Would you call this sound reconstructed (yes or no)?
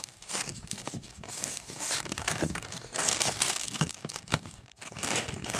yes